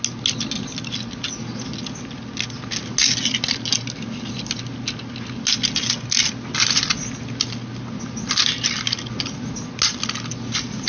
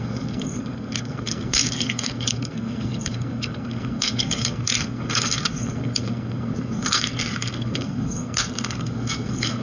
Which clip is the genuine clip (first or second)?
first